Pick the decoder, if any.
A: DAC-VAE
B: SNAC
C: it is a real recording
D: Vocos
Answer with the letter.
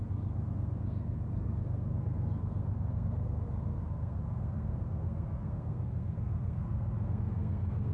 B